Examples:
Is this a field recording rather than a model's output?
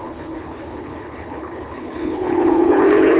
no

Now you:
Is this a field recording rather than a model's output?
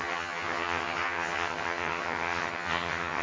no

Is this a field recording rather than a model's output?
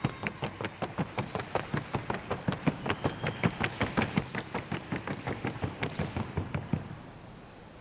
yes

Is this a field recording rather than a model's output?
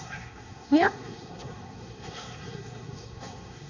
no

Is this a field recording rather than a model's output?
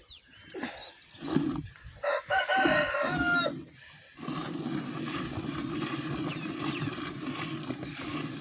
yes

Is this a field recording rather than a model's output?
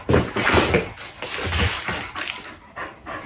yes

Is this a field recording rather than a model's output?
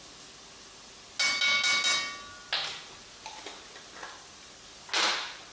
yes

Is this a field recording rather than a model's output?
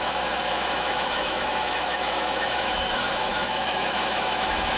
no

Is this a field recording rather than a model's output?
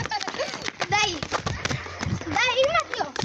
yes